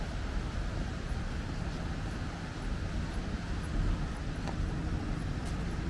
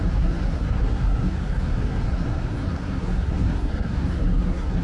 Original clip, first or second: first